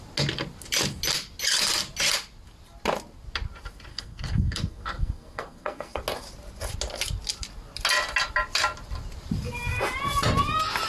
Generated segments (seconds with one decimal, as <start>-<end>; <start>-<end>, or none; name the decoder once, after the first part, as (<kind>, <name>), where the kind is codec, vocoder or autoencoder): 3.9-6.0 (codec, SNAC)